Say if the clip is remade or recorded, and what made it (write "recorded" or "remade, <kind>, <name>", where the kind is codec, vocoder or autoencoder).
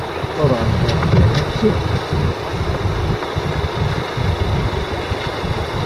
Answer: recorded